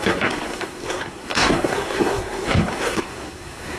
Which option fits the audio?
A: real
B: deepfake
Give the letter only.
B